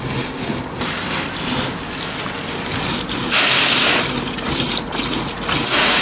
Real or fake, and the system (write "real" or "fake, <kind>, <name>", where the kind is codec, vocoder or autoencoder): real